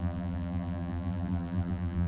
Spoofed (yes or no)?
yes